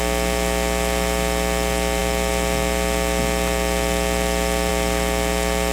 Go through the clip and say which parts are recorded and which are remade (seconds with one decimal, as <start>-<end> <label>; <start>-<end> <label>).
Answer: 0.0-5.7 recorded